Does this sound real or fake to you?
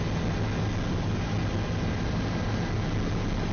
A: real